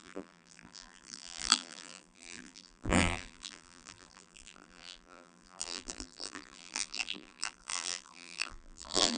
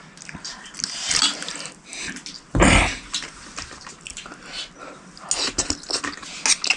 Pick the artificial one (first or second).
first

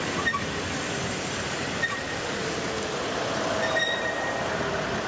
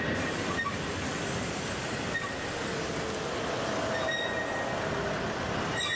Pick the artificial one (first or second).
first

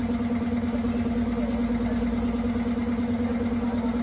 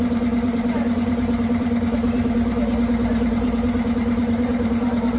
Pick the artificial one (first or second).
second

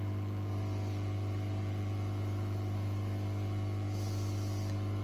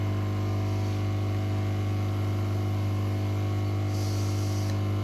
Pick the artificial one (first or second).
first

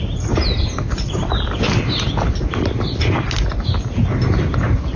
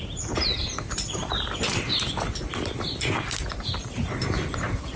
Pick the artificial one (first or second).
second